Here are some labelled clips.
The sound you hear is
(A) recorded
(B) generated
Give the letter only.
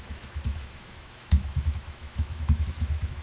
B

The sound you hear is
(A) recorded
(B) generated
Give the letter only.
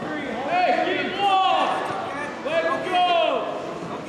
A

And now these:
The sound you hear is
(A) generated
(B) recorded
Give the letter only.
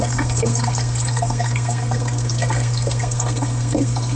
A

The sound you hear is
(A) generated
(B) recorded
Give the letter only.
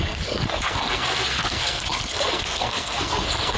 A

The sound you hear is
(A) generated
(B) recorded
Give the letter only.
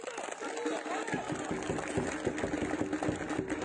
B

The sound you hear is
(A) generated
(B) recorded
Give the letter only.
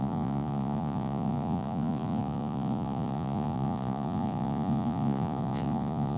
A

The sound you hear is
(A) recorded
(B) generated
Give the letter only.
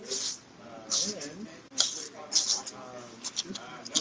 A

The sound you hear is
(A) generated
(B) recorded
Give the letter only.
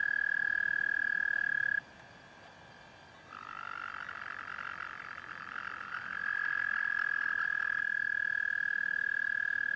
B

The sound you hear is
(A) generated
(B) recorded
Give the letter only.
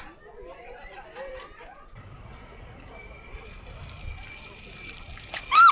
A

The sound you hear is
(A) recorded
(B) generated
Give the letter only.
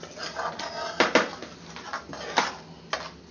A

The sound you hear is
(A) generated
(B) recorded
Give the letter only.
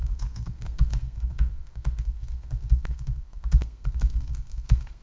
A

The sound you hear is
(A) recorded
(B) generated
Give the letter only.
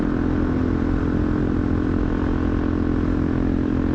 A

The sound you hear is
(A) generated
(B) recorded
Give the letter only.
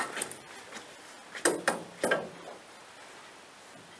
B